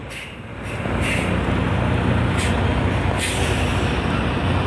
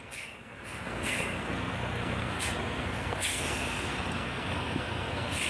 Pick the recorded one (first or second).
first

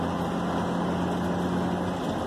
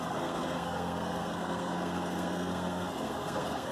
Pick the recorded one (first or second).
first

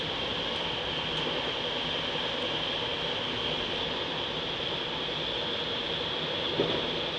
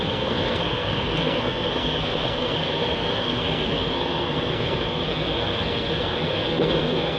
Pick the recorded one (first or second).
first